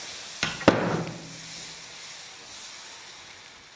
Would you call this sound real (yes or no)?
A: yes